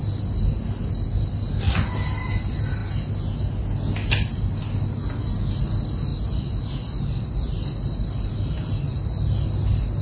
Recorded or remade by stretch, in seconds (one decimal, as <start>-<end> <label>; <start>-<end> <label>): 0.0-10.0 recorded